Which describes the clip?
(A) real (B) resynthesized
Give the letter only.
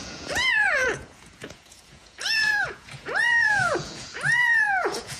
B